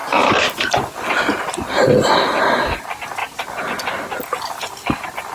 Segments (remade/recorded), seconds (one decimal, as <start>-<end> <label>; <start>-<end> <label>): 0.0-5.3 recorded